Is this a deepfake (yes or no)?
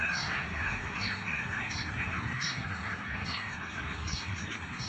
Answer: yes